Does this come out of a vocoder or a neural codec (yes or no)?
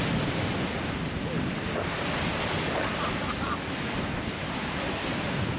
no